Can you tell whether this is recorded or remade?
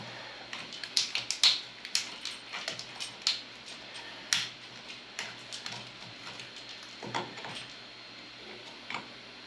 recorded